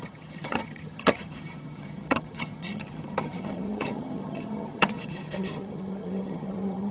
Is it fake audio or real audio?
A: fake